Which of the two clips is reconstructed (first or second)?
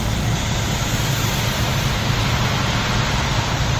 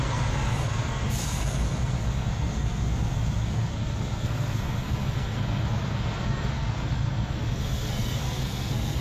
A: second